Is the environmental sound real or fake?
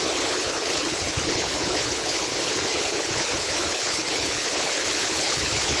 fake